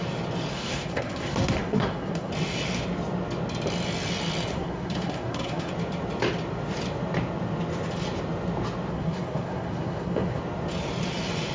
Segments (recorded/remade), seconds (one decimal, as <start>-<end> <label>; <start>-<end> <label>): 0.0-0.5 recorded; 0.5-2.3 remade; 2.3-4.5 recorded; 4.5-5.7 remade; 5.7-8.9 recorded; 8.9-10.4 remade; 10.4-11.5 recorded